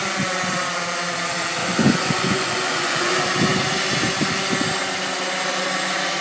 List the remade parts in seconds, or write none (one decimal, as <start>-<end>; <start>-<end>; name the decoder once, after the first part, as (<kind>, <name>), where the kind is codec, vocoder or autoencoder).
1.6-3.1 (vocoder, Vocos)